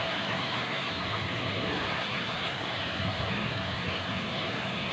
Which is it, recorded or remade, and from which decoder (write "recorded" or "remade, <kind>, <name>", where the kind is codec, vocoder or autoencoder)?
remade, codec, SNAC